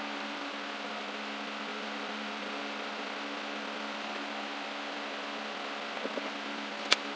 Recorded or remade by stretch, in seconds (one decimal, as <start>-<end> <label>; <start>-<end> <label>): 0.0-1.7 recorded; 1.7-2.6 remade; 2.6-7.2 recorded